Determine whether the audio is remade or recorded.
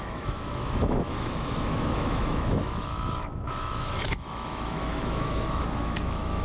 remade